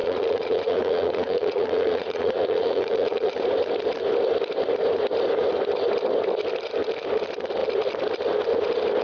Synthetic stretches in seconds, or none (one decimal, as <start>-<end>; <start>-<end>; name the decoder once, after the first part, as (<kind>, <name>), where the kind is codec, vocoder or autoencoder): 0.0-3.3 (vocoder, Vocos)